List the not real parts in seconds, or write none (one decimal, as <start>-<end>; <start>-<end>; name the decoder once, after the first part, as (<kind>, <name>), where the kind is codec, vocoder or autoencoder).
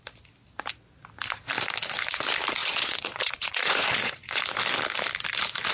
2.6-4.4 (vocoder, Vocos)